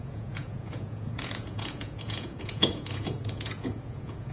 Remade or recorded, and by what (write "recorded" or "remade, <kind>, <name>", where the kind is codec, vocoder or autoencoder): remade, vocoder, Vocos